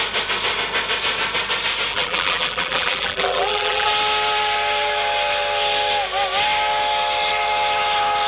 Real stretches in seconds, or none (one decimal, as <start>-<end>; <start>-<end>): 0.0-1.9; 3.9-8.3